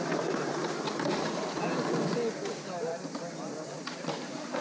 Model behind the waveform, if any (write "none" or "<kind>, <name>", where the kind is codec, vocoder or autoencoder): none